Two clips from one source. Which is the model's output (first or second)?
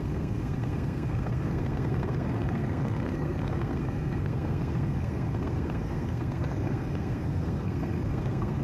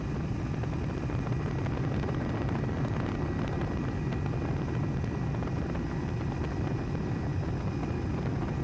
first